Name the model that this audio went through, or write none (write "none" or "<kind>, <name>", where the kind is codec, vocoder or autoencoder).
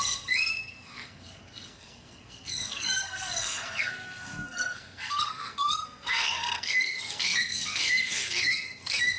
codec, SNAC